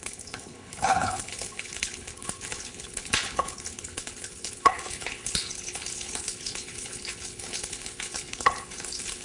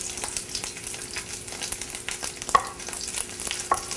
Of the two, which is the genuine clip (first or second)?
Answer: second